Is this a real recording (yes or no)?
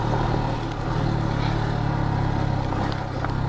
yes